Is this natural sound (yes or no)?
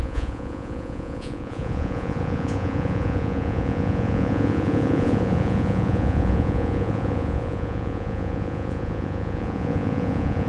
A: no